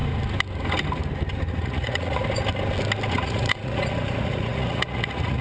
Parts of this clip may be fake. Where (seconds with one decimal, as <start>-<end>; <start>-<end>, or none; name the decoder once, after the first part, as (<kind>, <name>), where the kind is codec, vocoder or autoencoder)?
1.5-2.2 (vocoder, Vocos); 3.1-5.4